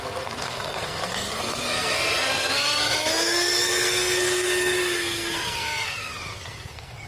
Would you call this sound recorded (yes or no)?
no